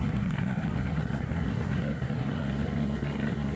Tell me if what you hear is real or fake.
fake